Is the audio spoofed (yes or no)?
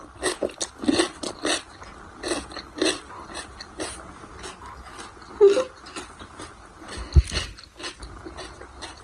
no